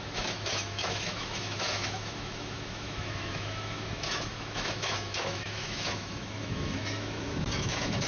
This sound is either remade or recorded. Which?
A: remade